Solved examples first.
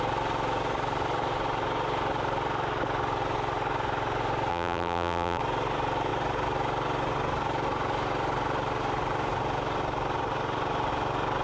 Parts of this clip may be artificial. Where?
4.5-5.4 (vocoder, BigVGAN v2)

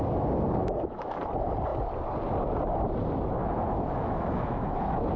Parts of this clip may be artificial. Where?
0.6-1.2 (autoencoder, DAC-VAE); 3.4-5.2

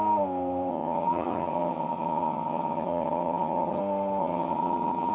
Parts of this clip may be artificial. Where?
0.7-3.8 (vocoder, HiFi-GAN); 4.2-5.1

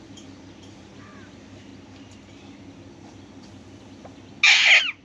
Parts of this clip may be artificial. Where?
0.0-1.7 (vocoder, BigVGAN v2)